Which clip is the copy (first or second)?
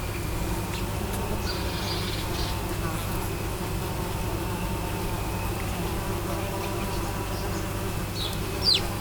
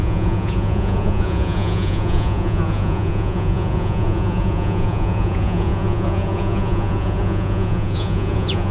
second